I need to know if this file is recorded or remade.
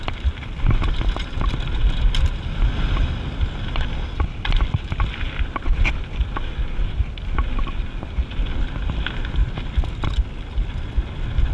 recorded